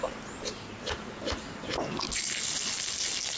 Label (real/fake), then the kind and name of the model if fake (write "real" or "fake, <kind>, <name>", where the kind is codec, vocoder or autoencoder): real